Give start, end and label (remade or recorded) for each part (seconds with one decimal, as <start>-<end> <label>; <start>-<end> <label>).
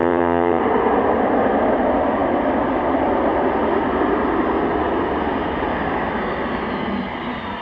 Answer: 0.0-0.6 remade; 0.6-7.6 recorded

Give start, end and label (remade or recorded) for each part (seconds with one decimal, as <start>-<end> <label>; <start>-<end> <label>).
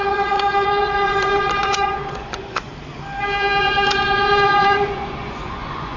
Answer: 0.0-2.7 remade; 2.7-3.6 recorded; 3.6-6.0 remade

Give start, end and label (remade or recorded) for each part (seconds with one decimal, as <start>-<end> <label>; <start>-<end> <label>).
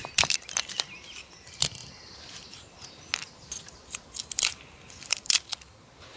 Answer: 0.0-6.2 recorded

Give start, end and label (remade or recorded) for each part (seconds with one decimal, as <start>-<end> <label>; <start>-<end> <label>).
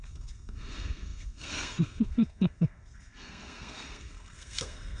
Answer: 0.0-5.0 remade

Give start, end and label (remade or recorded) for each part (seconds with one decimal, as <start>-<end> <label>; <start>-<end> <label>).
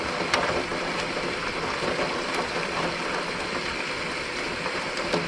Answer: 0.0-5.3 recorded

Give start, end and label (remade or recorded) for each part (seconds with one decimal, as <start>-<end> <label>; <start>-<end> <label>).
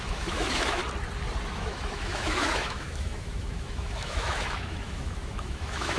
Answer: 0.0-0.8 remade; 0.8-1.5 recorded; 1.5-6.0 remade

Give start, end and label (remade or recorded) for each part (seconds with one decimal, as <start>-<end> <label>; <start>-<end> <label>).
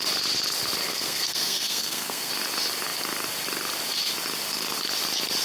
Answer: 0.0-0.9 recorded; 0.9-2.3 remade; 2.3-5.4 recorded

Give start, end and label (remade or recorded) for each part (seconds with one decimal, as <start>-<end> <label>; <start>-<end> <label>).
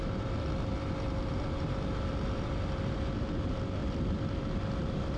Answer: 0.0-3.8 recorded; 3.8-5.2 remade